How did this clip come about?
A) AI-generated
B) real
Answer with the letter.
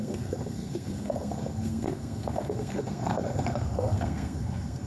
A